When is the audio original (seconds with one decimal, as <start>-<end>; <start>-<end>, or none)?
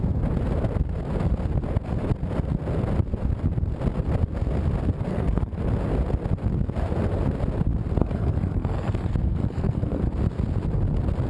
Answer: 0.0-5.1; 5.6-8.0; 10.0-11.3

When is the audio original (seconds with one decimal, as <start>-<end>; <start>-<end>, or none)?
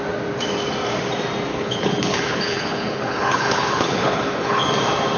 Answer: 0.0-1.5; 4.6-5.2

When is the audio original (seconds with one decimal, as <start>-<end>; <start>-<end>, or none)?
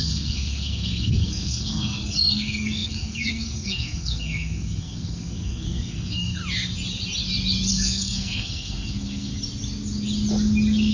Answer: 6.4-7.7; 9.3-10.9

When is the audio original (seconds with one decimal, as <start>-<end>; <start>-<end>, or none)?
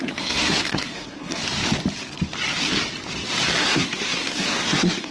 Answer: 1.4-3.6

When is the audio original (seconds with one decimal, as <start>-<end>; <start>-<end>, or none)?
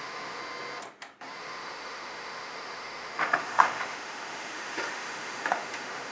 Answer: 0.4-1.4